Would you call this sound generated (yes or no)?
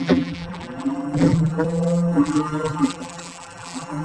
yes